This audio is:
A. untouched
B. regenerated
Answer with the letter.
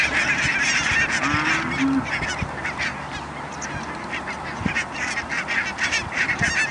A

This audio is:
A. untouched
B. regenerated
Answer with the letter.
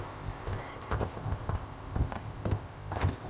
B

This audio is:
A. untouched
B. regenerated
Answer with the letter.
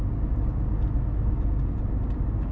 A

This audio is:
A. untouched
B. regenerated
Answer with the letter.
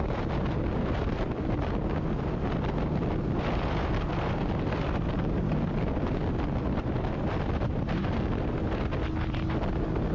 A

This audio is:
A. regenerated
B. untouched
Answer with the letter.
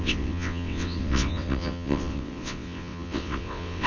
A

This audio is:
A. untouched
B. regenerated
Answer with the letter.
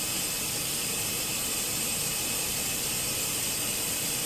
B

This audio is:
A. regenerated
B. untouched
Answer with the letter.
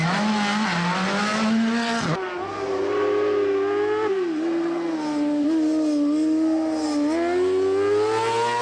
B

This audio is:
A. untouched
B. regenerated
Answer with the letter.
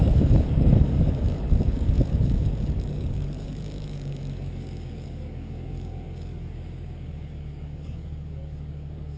B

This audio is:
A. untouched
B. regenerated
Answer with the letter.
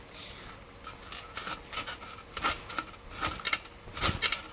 A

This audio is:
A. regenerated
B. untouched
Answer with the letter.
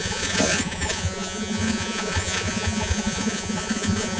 A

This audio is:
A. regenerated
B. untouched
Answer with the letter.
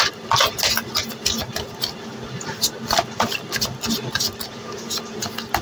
B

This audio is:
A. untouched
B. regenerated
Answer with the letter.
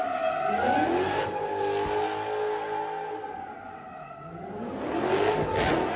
A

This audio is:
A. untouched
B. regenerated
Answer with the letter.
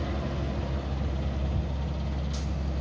A